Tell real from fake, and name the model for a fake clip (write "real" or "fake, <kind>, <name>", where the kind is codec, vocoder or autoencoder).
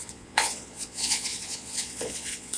fake, vocoder, Vocos